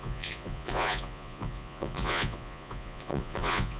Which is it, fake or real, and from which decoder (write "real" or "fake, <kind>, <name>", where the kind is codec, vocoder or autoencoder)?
fake, vocoder, Vocos